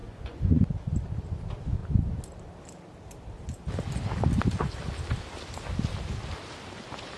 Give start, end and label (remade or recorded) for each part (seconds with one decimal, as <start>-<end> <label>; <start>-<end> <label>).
0.0-0.6 remade; 0.6-7.2 recorded